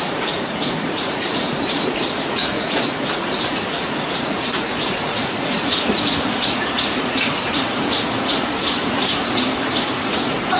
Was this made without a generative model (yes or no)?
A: no